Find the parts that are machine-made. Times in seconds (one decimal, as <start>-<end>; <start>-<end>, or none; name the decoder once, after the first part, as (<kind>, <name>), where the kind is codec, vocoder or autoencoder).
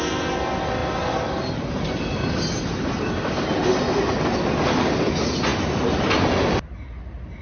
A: none